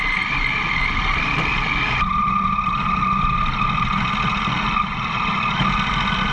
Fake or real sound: real